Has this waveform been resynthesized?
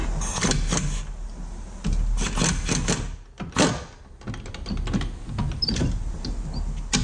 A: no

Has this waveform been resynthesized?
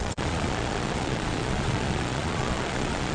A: yes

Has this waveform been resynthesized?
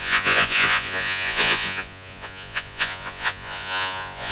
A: yes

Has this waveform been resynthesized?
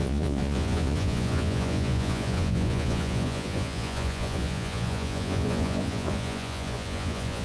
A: yes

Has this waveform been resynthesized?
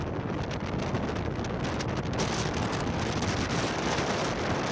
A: no